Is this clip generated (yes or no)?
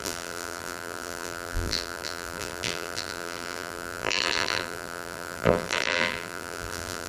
yes